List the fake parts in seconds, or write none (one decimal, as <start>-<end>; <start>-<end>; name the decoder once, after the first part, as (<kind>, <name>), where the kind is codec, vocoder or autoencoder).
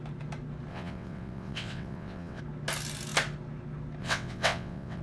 0.7-2.4 (vocoder, WaveNeXt); 4.0-5.0